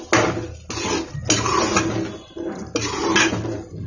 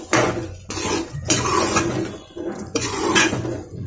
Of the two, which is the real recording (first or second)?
first